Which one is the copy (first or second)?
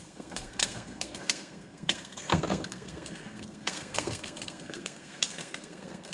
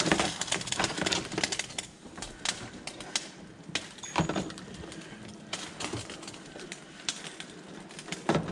first